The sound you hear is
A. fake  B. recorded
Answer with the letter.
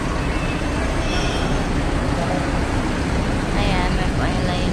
B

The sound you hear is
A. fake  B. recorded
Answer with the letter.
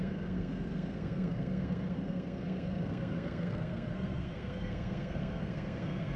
A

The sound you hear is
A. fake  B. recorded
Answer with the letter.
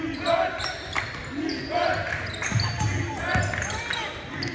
B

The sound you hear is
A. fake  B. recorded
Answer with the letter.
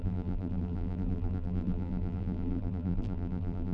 A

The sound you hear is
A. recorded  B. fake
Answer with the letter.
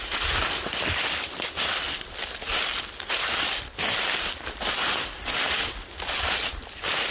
A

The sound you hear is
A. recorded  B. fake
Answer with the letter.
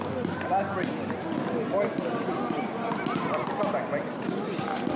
A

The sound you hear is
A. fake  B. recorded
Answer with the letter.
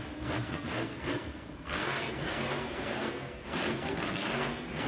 A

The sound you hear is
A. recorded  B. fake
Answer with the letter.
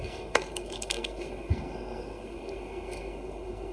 B